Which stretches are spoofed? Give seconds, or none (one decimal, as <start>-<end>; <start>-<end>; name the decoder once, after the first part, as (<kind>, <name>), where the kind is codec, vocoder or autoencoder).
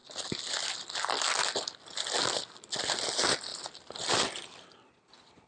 3.5-4.9 (vocoder, BigVGAN v2)